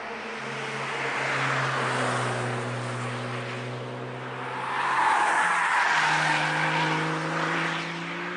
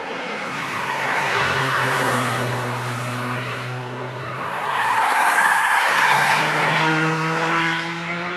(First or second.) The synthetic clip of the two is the second